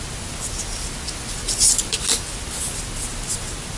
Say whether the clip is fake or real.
real